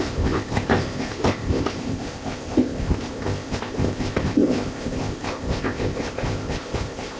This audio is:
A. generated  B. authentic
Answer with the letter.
A